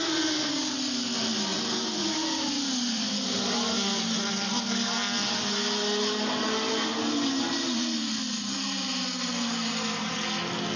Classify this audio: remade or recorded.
recorded